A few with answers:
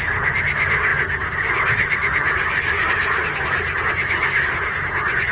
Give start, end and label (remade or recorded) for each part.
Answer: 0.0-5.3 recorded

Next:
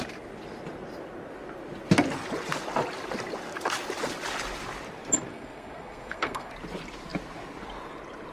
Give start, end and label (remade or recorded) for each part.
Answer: 0.0-5.3 recorded; 5.3-6.5 remade; 6.5-8.3 recorded

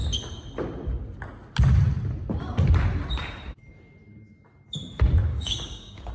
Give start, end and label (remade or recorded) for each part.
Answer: 0.0-5.3 recorded; 5.3-6.1 remade

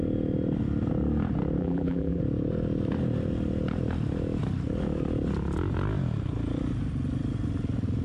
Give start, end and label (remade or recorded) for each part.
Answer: 0.0-1.6 recorded; 1.6-2.2 remade; 2.2-8.0 recorded